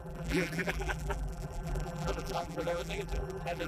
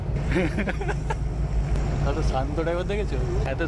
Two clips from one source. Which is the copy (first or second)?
first